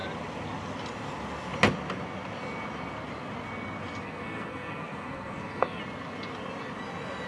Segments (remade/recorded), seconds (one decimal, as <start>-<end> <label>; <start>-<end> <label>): 0.0-4.0 recorded; 4.0-5.8 remade; 5.8-7.3 recorded